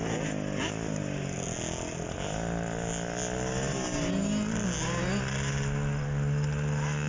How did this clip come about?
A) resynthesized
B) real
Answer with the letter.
B